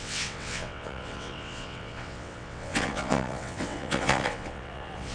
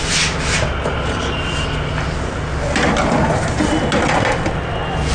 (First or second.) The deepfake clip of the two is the first